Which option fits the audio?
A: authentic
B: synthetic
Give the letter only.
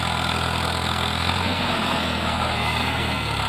B